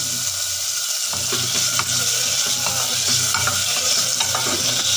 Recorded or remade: recorded